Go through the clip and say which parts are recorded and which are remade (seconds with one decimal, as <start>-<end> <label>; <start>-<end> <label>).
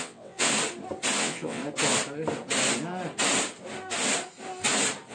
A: 0.0-0.5 remade; 0.5-1.2 recorded; 1.2-1.6 remade; 1.6-5.1 recorded